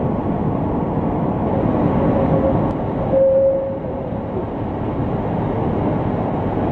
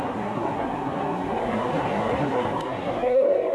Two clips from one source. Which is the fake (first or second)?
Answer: second